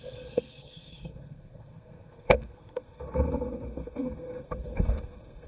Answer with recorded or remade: remade